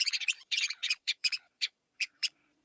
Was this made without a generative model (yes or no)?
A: no